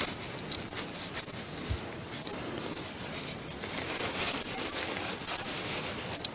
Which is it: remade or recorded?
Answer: remade